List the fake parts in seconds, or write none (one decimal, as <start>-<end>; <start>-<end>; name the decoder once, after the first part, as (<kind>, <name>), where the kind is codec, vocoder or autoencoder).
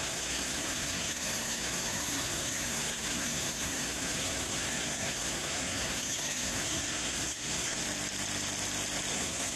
0.0-7.8 (codec, SNAC); 9.1-9.6